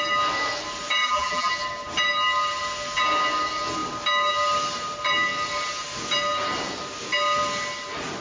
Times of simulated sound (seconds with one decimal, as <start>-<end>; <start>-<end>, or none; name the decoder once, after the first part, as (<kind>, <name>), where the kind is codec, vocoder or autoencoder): 1.0-1.5 (vocoder, BigVGAN v2)